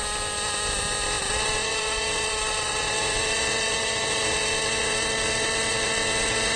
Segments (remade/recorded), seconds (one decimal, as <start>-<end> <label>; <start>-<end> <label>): 0.0-1.3 recorded; 1.3-6.6 remade